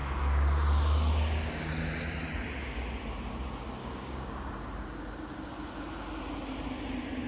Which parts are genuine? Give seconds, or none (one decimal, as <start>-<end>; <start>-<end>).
1.7-3.8; 4.5-7.3